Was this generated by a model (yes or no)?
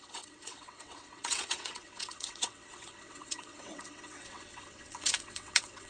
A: yes